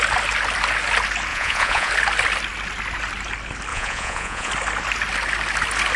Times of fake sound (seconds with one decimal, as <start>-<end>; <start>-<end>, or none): 1.3-1.9; 3.7-4.5